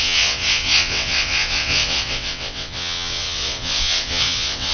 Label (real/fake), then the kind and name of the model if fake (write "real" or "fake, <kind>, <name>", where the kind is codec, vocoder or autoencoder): fake, vocoder, WaveNeXt